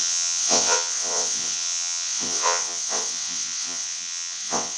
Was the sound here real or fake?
fake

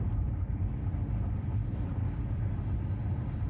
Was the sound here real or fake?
real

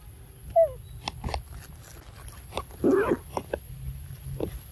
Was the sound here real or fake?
real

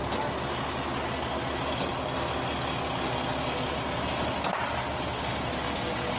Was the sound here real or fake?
real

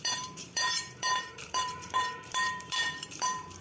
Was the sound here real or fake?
fake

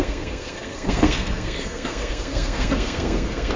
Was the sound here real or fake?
fake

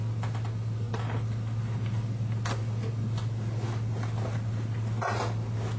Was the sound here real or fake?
real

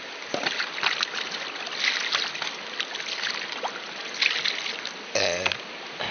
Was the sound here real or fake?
real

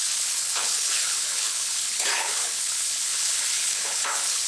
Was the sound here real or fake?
fake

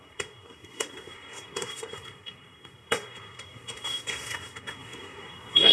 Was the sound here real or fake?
fake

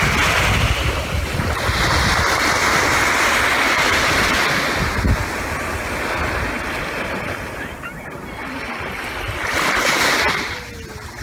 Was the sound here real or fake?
real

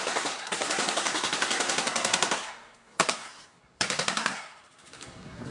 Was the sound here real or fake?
fake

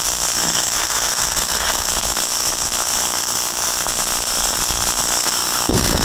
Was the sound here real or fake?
fake